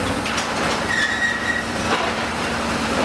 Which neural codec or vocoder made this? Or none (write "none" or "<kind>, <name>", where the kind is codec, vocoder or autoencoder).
vocoder, BigVGAN v2